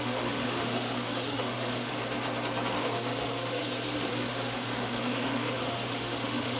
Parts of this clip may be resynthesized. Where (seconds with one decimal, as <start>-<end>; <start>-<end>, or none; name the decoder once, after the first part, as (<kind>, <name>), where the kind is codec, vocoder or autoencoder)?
0.0-1.9 (autoencoder, DAC-VAE); 2.8-3.6; 4.1-6.6